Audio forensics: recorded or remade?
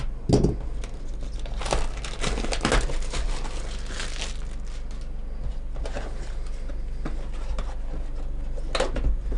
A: recorded